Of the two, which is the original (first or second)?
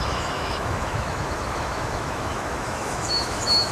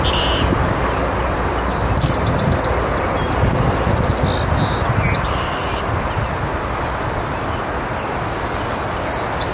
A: second